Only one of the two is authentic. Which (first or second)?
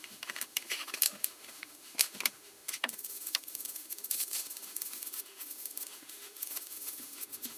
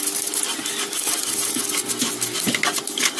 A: second